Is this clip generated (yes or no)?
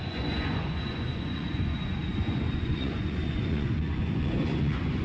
yes